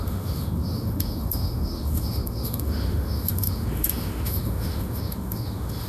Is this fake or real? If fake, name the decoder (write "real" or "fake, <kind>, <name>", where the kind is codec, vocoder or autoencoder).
fake, autoencoder, DAC-VAE